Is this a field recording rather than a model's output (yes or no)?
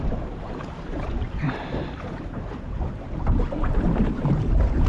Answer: no